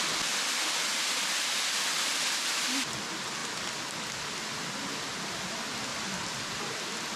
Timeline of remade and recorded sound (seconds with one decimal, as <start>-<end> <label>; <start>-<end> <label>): 0.0-5.9 recorded; 5.9-6.6 remade; 6.6-7.2 recorded